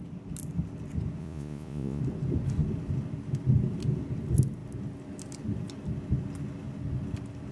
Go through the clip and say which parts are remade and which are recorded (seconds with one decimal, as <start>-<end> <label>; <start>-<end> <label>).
0.0-1.2 recorded; 1.2-2.0 remade; 2.0-7.5 recorded